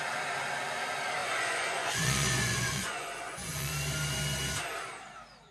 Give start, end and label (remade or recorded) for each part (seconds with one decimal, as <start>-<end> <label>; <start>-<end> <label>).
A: 0.0-1.2 recorded; 1.2-3.7 remade; 3.7-5.5 recorded

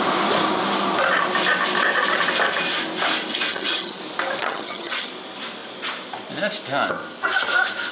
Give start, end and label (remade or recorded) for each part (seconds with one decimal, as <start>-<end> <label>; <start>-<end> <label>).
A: 0.0-3.5 recorded; 3.5-4.0 remade; 4.0-4.4 recorded; 4.4-5.1 remade; 5.1-7.9 recorded